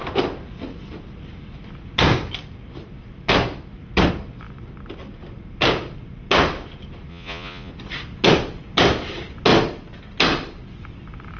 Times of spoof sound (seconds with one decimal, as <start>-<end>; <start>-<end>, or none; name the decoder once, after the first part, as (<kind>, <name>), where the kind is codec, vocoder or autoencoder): 7.1-7.7 (vocoder, Vocos)